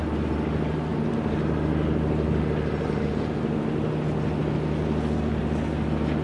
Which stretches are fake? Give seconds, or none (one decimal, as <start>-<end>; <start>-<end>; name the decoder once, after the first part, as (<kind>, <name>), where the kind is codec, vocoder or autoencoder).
none

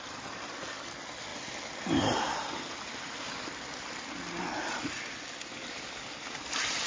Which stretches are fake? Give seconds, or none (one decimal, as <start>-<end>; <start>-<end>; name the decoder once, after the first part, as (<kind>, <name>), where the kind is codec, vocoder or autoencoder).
none

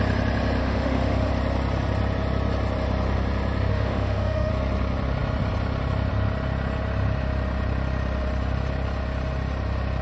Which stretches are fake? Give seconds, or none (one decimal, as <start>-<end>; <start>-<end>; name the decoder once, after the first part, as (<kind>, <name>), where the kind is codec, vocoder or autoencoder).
0.6-1.3 (autoencoder, DAC-VAE); 3.7-4.5

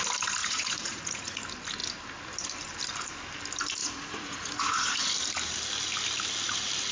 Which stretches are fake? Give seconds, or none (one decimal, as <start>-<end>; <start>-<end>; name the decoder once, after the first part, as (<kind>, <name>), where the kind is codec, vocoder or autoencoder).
0.4-1.4 (vocoder, Vocos); 3.8-5.1

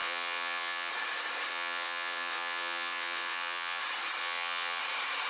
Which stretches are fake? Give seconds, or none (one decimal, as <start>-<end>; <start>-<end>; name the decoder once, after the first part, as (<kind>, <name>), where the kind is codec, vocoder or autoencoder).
0.0-0.9 (vocoder, WaveNeXt); 1.5-3.8; 4.2-4.8